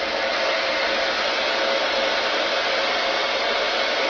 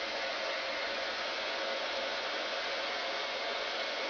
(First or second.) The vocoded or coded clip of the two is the second